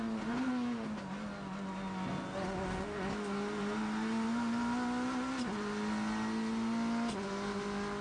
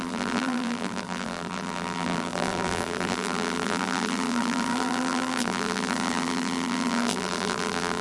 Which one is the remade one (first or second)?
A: second